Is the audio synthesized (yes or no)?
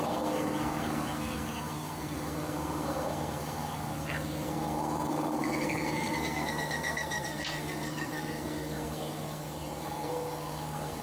yes